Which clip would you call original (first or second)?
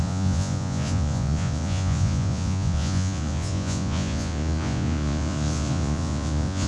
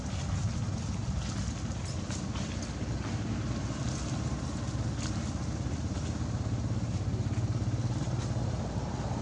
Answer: second